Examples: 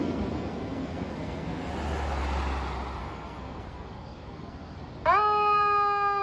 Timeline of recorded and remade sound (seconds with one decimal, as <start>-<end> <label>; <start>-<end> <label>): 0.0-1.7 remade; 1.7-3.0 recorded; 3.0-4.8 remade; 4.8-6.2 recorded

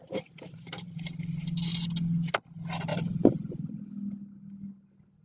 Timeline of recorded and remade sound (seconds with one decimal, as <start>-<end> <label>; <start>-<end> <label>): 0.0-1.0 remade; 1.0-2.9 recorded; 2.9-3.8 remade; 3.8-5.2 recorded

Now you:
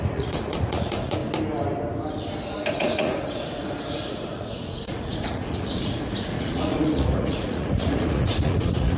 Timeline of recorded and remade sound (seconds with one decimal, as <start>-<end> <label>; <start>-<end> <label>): 0.0-1.2 remade; 1.2-2.7 recorded; 2.7-9.0 remade

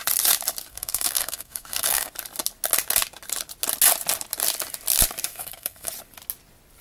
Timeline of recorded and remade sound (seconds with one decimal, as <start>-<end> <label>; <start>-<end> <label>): 0.0-0.7 recorded; 0.7-2.1 remade; 2.1-5.3 recorded; 5.3-5.9 remade; 5.9-6.8 recorded

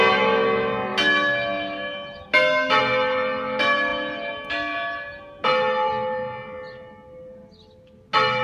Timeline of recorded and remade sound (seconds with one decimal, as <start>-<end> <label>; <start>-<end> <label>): 0.0-8.4 recorded

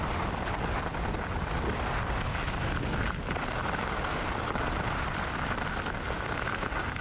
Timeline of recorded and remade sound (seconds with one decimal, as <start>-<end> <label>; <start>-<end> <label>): 0.0-7.0 recorded